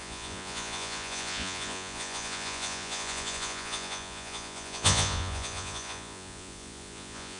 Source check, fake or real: fake